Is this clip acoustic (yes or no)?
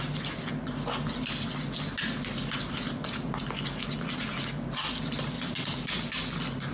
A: yes